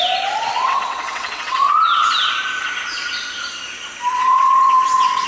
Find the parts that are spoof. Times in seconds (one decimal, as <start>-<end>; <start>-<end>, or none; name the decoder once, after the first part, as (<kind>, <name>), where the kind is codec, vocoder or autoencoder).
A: 0.5-2.1 (vocoder, WaveNeXt); 4.1-5.3